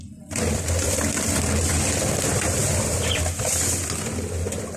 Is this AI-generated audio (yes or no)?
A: no